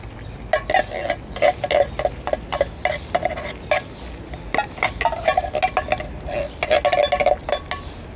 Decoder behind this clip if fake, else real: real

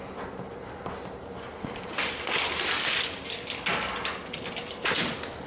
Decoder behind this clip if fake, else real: real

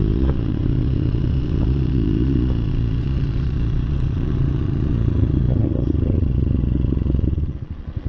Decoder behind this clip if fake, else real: fake, vocoder, Vocos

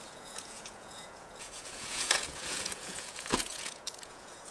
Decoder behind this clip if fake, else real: fake, vocoder, Vocos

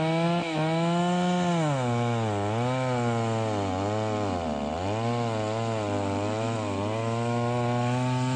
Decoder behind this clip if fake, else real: real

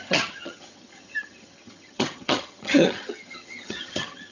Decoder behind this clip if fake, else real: fake, vocoder, HiFi-GAN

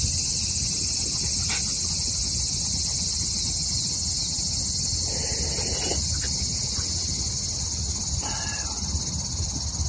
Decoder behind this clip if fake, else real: real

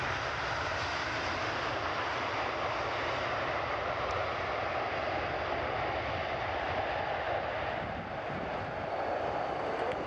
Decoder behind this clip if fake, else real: real